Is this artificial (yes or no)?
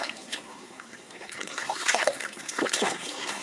yes